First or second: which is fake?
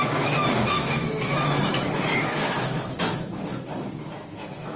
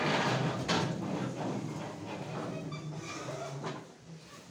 first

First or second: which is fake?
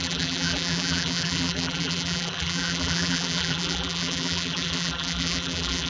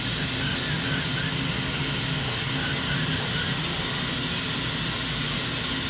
first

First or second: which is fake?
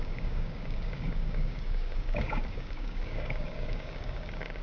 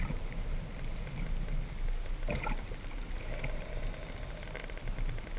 first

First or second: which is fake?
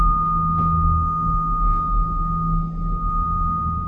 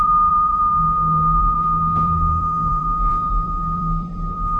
second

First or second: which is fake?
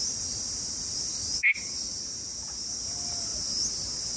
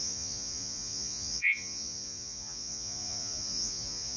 second